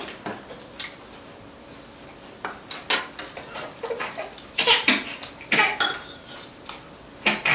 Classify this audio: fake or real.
real